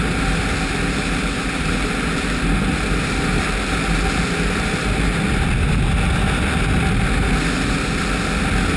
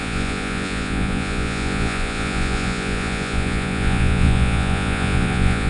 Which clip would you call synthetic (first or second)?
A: second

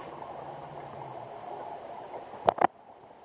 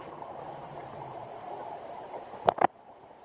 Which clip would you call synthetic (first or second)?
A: second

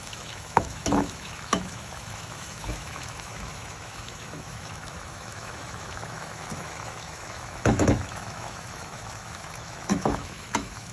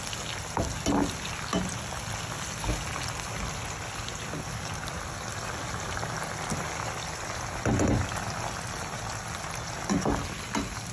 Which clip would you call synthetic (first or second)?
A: first